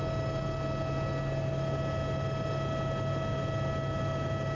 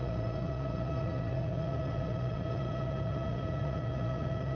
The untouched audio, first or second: first